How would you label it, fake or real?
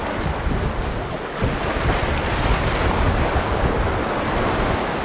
real